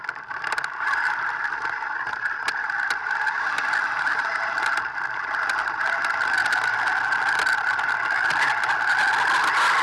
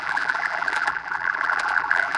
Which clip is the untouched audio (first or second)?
first